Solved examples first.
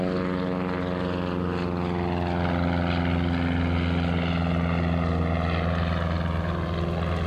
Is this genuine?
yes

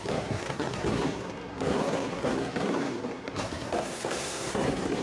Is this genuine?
no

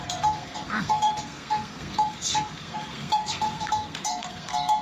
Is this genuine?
no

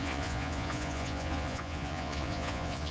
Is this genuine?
no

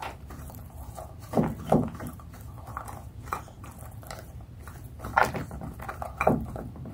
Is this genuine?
yes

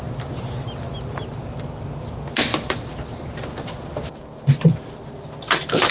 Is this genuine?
yes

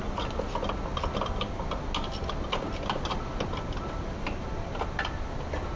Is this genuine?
yes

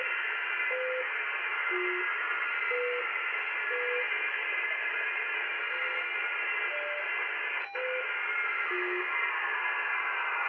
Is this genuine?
yes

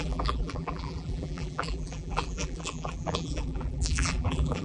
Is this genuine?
no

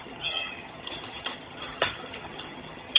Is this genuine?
no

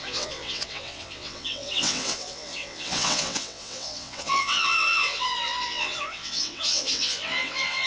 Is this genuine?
no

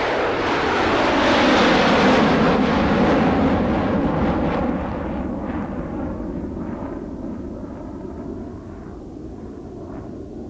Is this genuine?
yes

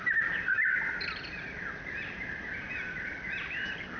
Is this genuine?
yes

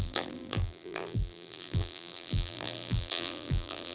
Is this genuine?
no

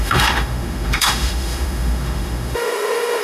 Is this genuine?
no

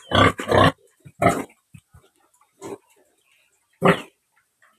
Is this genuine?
yes